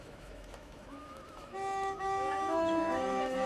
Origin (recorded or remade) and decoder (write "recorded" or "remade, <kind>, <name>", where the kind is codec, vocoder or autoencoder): remade, autoencoder, DAC-VAE